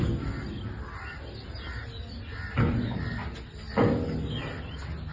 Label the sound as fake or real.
real